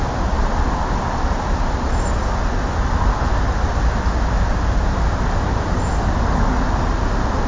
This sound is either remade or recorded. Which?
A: recorded